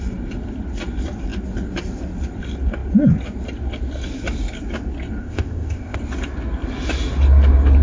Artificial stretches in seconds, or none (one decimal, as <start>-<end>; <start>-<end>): 5.2-6.0